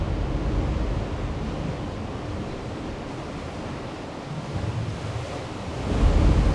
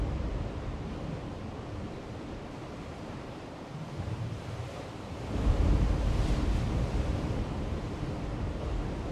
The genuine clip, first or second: first